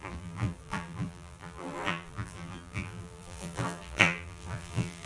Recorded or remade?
remade